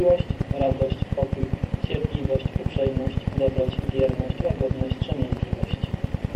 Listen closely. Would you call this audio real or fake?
fake